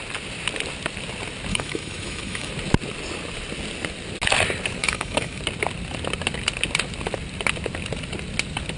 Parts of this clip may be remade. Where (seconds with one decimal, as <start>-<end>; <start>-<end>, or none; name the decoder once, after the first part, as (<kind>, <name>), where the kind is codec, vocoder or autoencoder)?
1.5-2.5 (autoencoder, DAC-VAE); 4.8-5.4